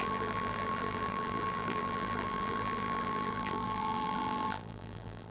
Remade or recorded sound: remade